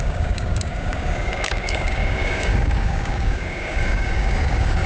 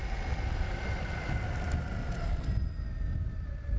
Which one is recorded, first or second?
second